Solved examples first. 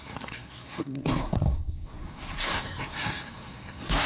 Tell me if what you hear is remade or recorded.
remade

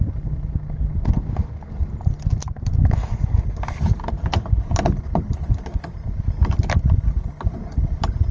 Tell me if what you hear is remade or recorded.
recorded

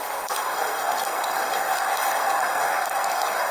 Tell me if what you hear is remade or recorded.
remade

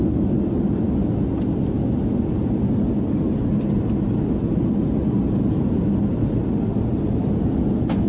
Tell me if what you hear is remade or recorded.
recorded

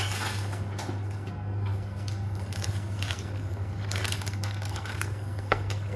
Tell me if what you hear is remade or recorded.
remade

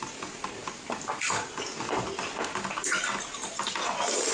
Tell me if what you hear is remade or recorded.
recorded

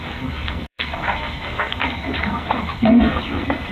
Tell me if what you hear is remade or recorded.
remade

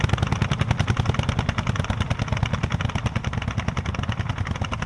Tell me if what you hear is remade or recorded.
recorded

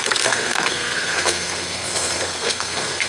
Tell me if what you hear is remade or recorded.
remade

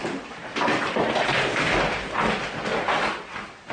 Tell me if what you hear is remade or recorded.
recorded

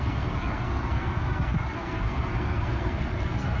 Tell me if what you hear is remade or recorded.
remade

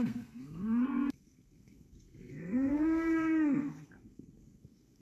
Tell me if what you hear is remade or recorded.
remade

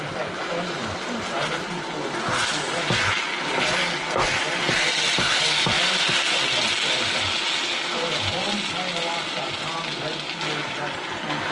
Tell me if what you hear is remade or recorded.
recorded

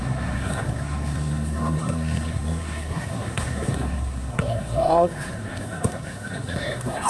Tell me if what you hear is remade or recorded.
remade